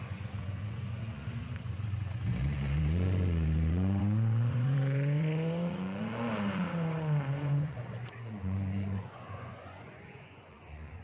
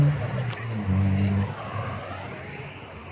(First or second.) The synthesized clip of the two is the first